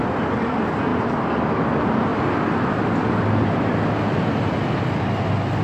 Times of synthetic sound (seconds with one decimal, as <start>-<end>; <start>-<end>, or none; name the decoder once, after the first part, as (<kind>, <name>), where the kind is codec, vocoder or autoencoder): none